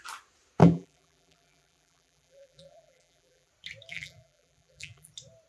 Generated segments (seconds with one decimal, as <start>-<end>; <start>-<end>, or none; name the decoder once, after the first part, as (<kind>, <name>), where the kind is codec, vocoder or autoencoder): 0.6-3.5 (vocoder, BigVGAN v2); 3.9-5.1